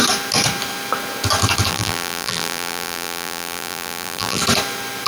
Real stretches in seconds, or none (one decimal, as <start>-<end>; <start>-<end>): 0.0-1.7; 4.4-5.1